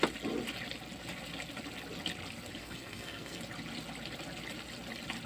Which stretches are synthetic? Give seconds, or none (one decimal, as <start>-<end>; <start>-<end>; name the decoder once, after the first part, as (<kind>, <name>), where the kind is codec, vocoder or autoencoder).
2.6-3.4 (codec, SNAC)